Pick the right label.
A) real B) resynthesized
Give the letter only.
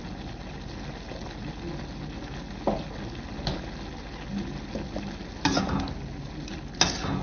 A